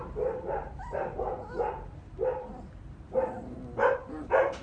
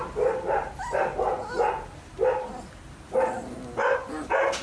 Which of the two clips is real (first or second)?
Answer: second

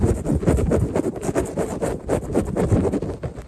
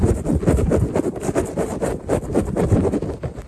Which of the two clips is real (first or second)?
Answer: first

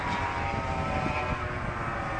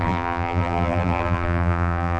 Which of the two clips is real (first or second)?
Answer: first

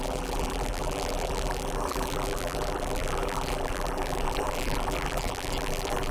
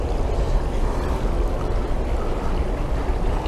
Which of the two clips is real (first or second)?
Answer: second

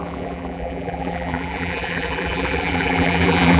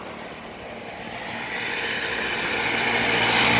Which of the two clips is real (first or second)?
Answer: second